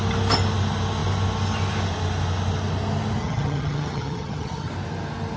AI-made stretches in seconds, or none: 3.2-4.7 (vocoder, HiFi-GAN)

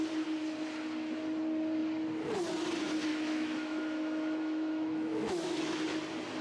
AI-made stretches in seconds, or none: 3.1-5.8 (autoencoder, DAC-VAE)

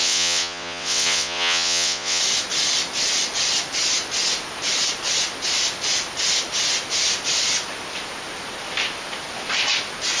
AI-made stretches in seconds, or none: 0.0-2.2 (vocoder, WaveNeXt)

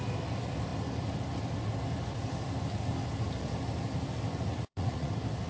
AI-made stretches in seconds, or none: 4.5-5.1 (vocoder, Vocos)

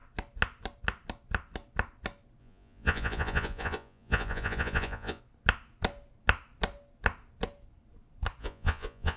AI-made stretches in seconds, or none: 2.4-5.2 (vocoder, Vocos); 8.4-9.2